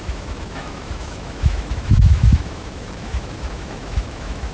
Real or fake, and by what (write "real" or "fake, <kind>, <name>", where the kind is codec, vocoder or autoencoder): fake, autoencoder, DAC-VAE